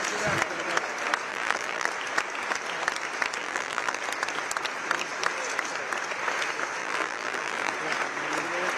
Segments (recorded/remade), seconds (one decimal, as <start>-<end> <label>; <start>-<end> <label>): 0.0-1.3 recorded; 1.3-1.9 remade; 1.9-3.4 recorded; 3.4-4.0 remade; 4.0-6.8 recorded; 6.8-7.7 remade; 7.7-8.8 recorded